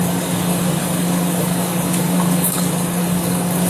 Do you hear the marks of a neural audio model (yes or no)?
yes